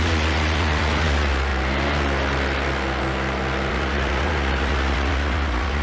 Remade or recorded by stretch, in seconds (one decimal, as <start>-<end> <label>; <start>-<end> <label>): 0.0-1.5 remade; 1.5-3.7 recorded; 3.7-5.8 remade